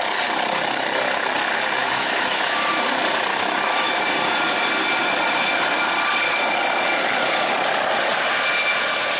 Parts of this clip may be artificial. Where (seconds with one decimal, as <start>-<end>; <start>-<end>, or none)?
1.8-2.7; 3.3-4.0